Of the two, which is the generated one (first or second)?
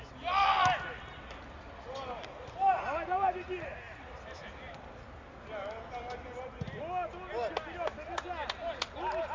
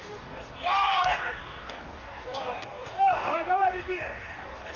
second